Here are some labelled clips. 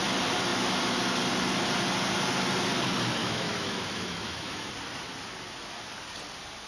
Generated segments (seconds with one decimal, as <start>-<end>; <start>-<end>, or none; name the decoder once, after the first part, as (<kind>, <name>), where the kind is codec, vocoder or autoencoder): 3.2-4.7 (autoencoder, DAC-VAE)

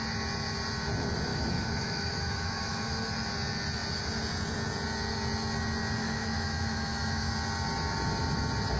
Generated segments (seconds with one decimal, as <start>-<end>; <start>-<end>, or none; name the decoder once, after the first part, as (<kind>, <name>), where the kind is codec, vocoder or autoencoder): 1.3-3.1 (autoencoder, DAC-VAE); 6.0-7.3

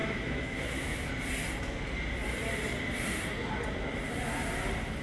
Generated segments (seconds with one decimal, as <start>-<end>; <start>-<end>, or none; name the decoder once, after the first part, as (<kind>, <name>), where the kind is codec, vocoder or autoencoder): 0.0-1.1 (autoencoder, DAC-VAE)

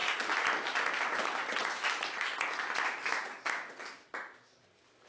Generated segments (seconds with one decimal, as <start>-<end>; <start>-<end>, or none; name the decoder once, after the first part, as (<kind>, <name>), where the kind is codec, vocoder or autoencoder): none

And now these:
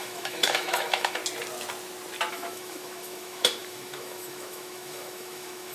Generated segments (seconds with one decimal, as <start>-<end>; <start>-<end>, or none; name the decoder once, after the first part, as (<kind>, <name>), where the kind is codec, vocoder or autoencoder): 0.0-1.2 (autoencoder, DAC-VAE); 2.3-5.7